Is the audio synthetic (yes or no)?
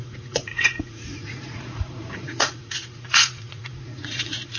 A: yes